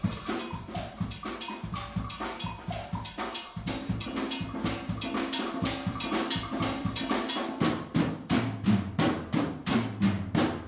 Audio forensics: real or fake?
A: fake